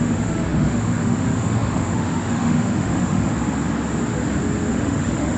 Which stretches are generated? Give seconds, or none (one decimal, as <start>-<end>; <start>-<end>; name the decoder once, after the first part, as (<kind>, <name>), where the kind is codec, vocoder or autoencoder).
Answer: 0.0-3.3 (autoencoder, DAC-VAE); 4.7-5.4